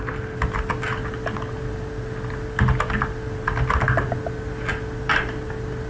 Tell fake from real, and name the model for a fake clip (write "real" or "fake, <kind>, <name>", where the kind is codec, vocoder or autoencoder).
real